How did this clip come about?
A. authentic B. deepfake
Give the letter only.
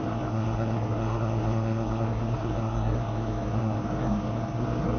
B